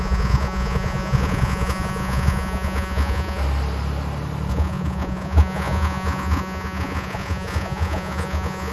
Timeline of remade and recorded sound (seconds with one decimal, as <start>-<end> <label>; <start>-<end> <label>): 0.0-3.4 remade; 3.4-4.5 recorded; 4.5-8.7 remade